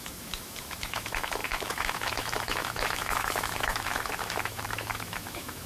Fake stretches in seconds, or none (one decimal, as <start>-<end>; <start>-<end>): 0.0-5.7